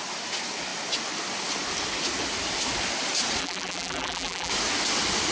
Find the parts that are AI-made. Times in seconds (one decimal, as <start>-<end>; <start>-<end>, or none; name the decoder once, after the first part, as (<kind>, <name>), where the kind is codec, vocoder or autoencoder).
3.4-4.5 (vocoder, BigVGAN v2)